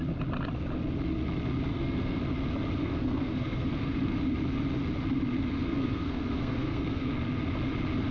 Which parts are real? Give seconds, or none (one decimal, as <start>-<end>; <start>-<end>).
0.0-1.7; 2.2-2.8; 4.2-5.5; 7.1-8.1